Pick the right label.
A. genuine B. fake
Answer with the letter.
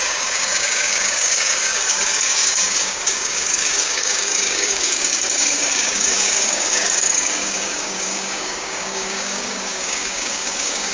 B